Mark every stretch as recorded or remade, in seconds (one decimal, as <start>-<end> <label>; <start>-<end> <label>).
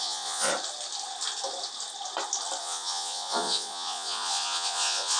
0.0-0.5 remade; 0.5-2.6 recorded; 2.6-5.2 remade